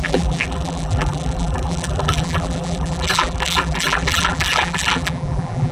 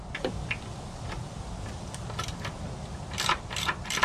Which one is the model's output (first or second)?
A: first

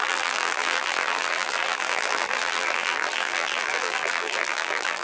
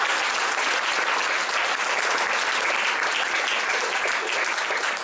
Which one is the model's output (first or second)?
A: first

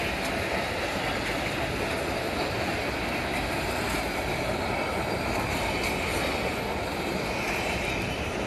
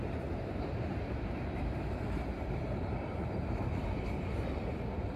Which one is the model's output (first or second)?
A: second